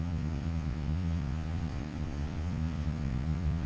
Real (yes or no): no